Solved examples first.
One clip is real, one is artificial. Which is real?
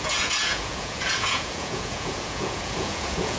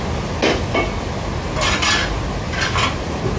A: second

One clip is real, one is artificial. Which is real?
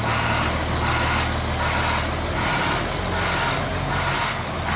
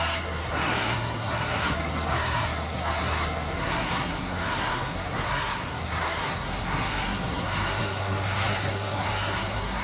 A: first